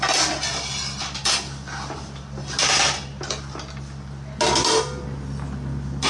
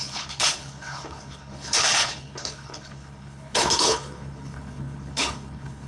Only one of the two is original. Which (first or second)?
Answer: first